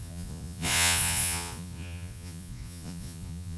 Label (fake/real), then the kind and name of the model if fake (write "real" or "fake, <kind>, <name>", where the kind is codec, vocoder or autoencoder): fake, vocoder, Vocos